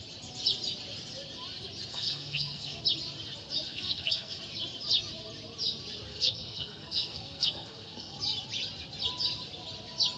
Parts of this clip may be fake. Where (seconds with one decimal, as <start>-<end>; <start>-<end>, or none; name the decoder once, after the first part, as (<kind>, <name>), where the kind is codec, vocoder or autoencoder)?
1.9-2.8 (codec, SNAC); 3.7-4.4; 6.1-8.2